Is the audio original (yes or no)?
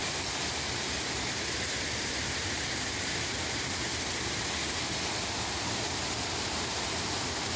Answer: yes